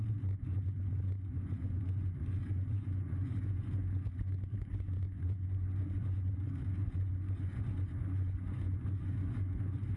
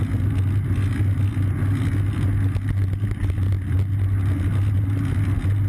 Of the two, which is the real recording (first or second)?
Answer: second